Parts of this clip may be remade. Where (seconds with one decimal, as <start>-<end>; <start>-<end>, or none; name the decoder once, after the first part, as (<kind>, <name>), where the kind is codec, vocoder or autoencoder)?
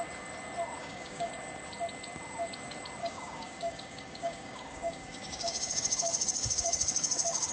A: 0.8-1.3 (codec, DAC); 3.0-7.5